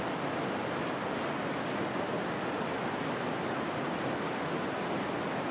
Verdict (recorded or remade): recorded